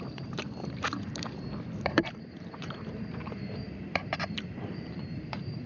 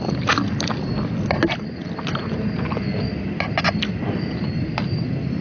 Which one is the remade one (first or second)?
first